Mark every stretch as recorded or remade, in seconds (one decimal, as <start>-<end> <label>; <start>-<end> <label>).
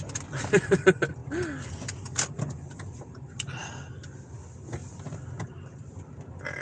0.0-6.6 recorded